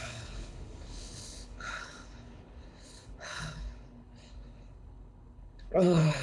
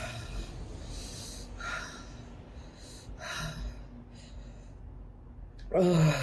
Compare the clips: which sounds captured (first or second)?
second